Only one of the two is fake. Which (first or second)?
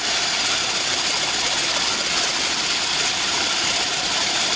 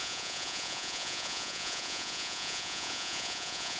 second